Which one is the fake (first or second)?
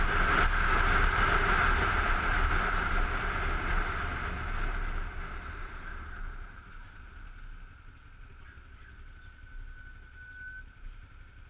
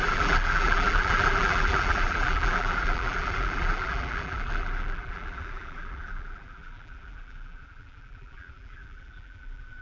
second